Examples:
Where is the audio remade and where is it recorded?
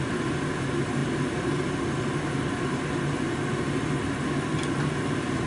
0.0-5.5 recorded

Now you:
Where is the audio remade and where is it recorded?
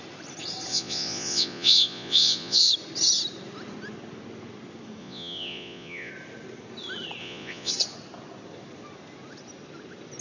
0.0-0.7 recorded; 0.7-2.7 remade; 2.7-5.0 recorded; 5.0-6.1 remade; 6.1-7.2 recorded; 7.2-7.7 remade; 7.7-10.2 recorded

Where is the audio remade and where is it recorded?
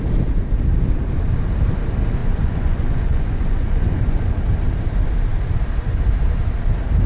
0.0-2.2 recorded; 2.2-4.3 remade; 4.3-7.1 recorded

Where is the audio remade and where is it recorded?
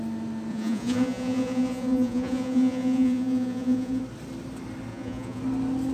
0.0-0.5 recorded; 0.5-4.0 remade; 4.0-4.9 recorded; 4.9-5.4 remade; 5.4-5.9 recorded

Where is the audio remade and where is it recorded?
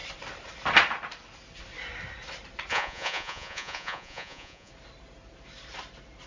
0.0-2.7 recorded; 2.7-4.7 remade; 4.7-6.3 recorded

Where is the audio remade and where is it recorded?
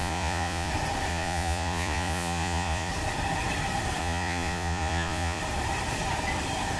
0.0-0.7 remade; 0.7-1.1 recorded; 1.1-2.9 remade; 2.9-4.0 recorded; 4.0-5.4 remade; 5.4-6.8 recorded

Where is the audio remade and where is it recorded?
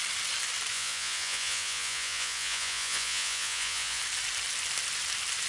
0.0-0.7 recorded; 0.7-4.0 remade; 4.0-5.5 recorded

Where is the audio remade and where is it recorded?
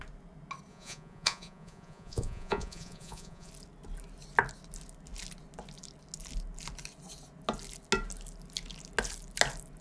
0.0-0.7 recorded; 0.7-3.5 remade; 3.5-9.8 recorded